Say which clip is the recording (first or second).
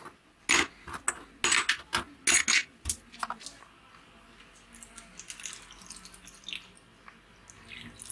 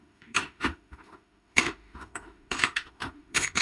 first